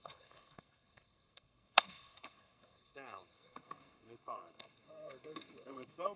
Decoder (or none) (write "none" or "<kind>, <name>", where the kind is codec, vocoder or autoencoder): codec, SNAC